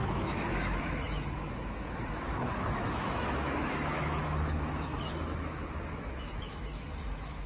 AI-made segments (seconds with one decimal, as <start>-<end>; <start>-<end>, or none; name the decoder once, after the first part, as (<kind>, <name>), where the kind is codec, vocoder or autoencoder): 0.0-7.5 (autoencoder, DAC-VAE)

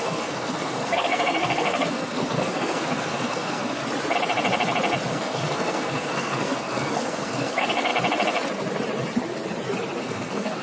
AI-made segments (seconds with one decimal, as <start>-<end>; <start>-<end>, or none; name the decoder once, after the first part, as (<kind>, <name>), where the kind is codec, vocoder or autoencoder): 0.0-3.8 (codec, SNAC); 5.1-7.9; 10.0-10.6

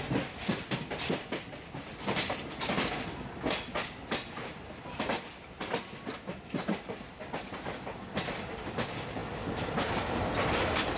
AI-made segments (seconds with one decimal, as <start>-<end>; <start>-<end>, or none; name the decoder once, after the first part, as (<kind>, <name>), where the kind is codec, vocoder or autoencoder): none

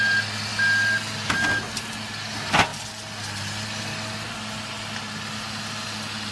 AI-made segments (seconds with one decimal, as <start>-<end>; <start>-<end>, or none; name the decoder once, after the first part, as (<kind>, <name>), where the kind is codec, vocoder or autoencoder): none

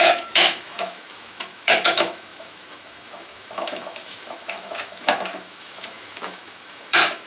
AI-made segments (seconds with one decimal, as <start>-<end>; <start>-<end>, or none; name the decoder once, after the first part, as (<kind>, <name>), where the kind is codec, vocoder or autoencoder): 0.0-7.3 (autoencoder, DAC-VAE)